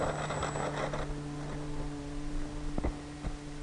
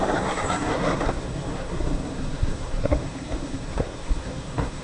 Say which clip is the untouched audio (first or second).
first